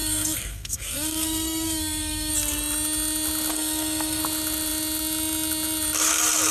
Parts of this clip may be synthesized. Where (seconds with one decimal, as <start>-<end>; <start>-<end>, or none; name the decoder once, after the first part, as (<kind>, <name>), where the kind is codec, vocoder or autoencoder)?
0.0-2.3 (codec, SNAC); 3.5-4.2